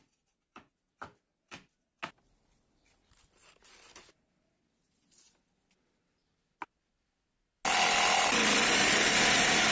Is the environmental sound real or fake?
real